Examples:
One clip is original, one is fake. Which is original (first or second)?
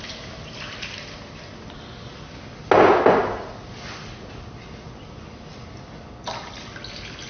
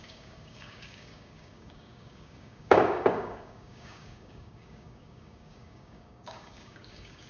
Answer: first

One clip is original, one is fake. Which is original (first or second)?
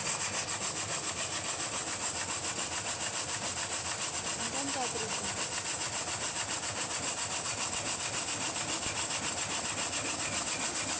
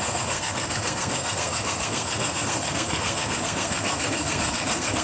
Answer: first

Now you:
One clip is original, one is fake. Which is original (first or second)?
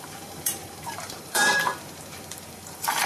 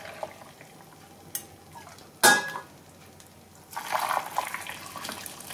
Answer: second